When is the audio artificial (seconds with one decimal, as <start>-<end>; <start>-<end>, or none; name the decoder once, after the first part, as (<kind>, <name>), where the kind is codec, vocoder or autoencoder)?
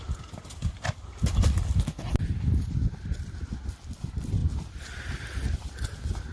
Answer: none